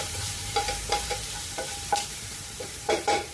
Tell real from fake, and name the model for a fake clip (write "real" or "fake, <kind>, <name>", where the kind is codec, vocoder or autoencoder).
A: fake, vocoder, BigVGAN v2